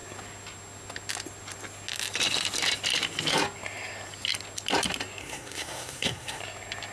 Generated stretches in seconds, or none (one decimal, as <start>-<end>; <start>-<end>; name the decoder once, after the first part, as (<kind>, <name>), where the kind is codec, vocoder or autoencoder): 5.2-6.4 (codec, SNAC)